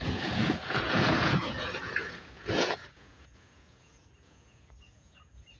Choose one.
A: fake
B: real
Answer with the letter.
A